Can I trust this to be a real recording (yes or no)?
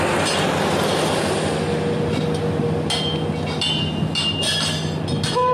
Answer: yes